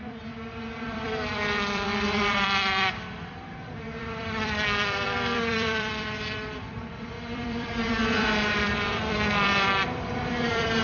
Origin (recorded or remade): remade